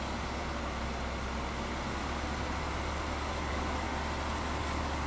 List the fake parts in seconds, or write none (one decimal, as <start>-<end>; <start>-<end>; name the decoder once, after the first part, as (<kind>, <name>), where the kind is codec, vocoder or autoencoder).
0.0-0.4 (codec, DAC); 3.5-3.9; 4.6-5.1